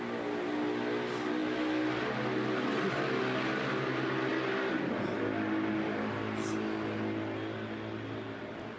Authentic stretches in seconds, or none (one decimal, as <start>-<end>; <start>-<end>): 0.0-8.8